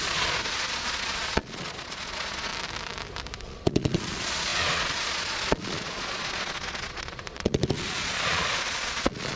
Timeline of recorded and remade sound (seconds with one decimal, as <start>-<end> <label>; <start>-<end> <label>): 0.0-2.5 remade; 2.5-3.4 recorded; 3.4-9.4 remade